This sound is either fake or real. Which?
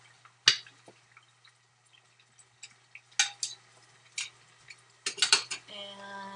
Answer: real